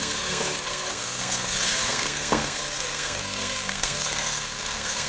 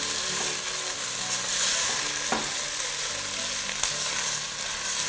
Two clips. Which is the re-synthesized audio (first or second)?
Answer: first